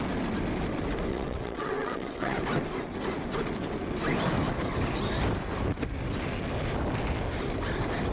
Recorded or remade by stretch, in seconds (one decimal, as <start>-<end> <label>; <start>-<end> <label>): 0.0-1.1 recorded; 1.1-2.4 remade; 2.4-8.1 recorded